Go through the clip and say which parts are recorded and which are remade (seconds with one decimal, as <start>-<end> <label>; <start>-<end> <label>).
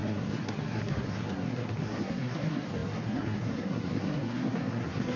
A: 0.0-5.2 remade